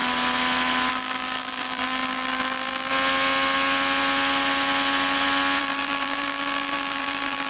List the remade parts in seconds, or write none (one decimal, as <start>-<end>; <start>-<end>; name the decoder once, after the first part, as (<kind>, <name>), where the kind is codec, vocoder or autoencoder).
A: 0.9-2.9 (vocoder, BigVGAN v2); 5.6-7.5